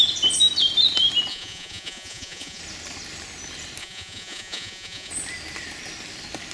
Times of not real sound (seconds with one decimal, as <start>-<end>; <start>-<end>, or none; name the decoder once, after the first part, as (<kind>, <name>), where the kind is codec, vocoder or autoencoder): 1.3-2.6 (vocoder, Vocos); 3.8-5.1

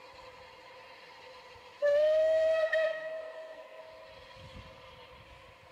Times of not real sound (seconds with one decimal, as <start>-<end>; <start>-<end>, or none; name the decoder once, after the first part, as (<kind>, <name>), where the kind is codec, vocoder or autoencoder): 1.8-3.8 (codec, SNAC)

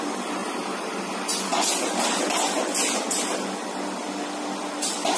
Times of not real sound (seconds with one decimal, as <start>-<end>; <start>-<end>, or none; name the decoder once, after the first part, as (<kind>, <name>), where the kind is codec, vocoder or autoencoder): none

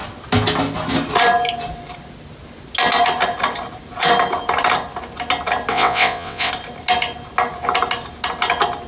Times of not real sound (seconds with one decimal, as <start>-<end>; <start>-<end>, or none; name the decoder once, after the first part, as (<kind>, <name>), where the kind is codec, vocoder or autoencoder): 5.7-6.5 (vocoder, WaveNeXt)

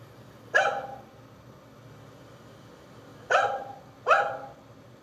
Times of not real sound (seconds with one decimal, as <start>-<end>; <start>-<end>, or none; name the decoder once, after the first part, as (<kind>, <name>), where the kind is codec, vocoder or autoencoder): none

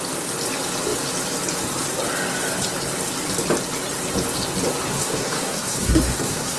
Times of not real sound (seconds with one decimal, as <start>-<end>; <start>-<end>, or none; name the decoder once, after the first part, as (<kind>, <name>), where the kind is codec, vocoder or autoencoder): 4.9-6.6 (codec, SNAC)